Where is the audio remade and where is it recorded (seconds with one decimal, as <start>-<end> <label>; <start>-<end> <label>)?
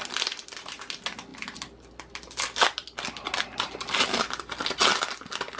0.0-5.6 recorded